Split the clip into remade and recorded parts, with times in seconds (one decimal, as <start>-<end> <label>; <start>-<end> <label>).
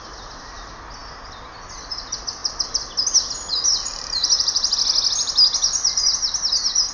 0.0-6.9 recorded